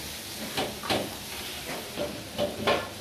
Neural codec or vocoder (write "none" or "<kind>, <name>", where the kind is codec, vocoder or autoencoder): none